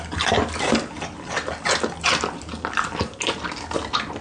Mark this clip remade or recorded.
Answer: recorded